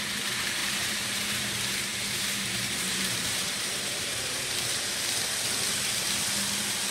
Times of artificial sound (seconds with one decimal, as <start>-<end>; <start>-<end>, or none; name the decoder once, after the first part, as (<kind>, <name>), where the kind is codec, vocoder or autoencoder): 0.6-1.4 (vocoder, BigVGAN v2); 1.9-5.1